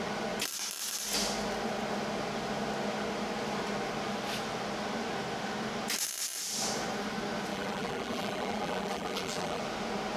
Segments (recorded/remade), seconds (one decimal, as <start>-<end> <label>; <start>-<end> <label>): 0.0-7.5 recorded; 7.5-9.6 remade; 9.6-10.2 recorded